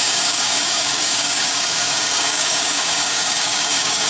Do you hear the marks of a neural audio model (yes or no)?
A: yes